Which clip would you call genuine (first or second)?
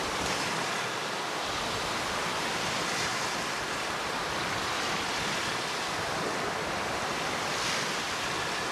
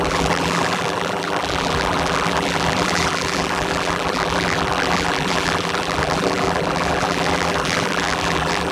first